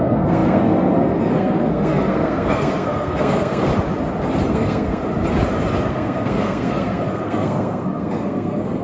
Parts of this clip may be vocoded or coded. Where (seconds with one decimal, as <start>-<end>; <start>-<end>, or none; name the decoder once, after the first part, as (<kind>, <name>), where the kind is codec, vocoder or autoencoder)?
0.0-3.7 (codec, SNAC); 4.5-5.0; 5.9-8.8